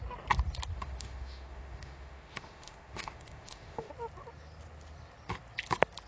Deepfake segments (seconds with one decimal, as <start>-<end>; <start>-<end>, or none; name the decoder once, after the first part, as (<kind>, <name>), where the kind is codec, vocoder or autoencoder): 0.7-3.9 (autoencoder, DAC-VAE)